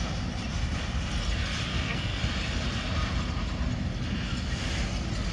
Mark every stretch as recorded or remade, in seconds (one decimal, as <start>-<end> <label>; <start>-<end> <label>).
0.0-1.7 recorded; 1.7-2.2 remade; 2.2-5.3 recorded